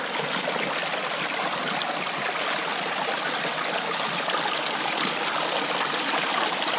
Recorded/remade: recorded